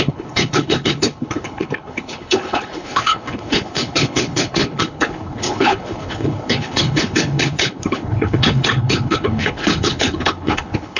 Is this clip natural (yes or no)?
no